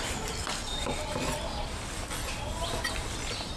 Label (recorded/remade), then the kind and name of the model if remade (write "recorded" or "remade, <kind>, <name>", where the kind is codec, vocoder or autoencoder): recorded